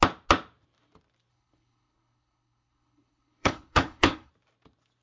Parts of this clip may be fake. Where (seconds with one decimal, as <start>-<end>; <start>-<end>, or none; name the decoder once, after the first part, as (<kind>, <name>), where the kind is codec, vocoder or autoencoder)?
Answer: 1.3-4.3 (codec, HILCodec)